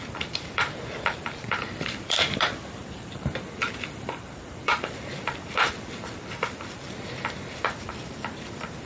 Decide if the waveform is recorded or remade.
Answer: remade